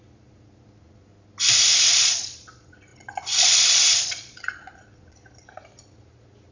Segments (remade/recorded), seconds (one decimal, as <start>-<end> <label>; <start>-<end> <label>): 0.0-1.1 remade; 1.1-1.9 recorded; 1.9-6.5 remade